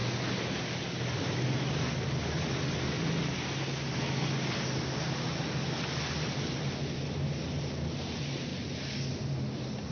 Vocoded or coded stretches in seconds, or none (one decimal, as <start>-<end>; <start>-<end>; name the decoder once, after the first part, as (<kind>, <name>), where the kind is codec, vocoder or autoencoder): none